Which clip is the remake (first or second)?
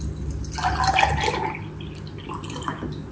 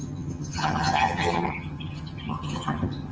second